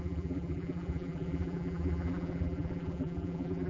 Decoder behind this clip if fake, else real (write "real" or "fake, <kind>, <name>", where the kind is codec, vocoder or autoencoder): fake, vocoder, BigVGAN v2